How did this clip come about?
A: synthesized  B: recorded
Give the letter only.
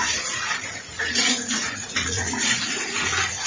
A